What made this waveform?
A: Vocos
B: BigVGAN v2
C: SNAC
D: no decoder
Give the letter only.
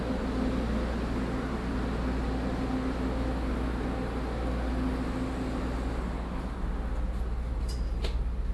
D